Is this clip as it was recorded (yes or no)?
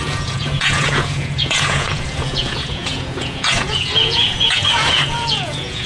no